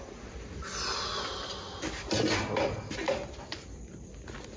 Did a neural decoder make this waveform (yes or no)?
no